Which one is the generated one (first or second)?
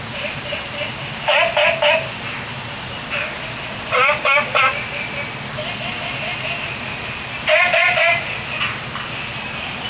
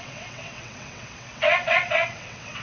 second